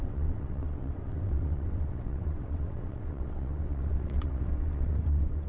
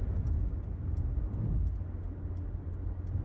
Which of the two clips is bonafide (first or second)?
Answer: second